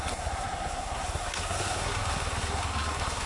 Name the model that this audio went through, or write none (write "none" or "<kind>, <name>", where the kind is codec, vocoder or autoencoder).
codec, SNAC